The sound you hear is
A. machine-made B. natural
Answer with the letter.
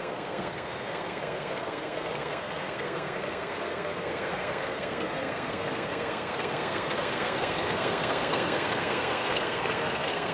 A